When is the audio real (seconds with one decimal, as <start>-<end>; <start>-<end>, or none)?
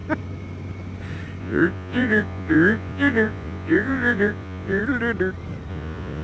0.0-1.4; 4.8-5.7